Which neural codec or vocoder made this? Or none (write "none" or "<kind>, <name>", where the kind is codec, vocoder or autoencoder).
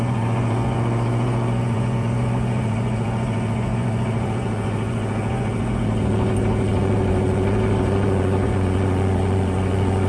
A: vocoder, Vocos